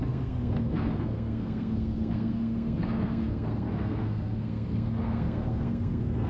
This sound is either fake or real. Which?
fake